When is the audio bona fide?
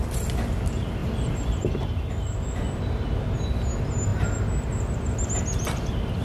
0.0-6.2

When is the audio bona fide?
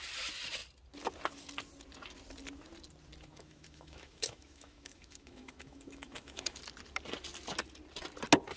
0.0-3.3; 6.6-8.6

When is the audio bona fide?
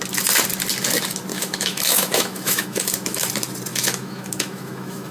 0.0-1.3; 3.3-3.7